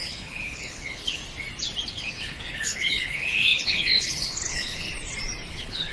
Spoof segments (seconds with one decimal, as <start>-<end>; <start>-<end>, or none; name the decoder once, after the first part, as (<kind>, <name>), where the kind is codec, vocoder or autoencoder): 0.0-1.2 (codec, HILCodec); 1.9-4.9; 5.5-5.9